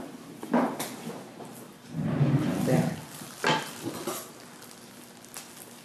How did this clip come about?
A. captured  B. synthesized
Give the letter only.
A